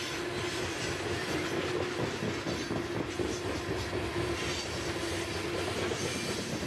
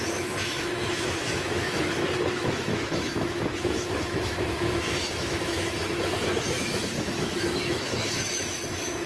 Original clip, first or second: first